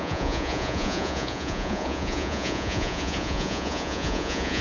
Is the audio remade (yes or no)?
yes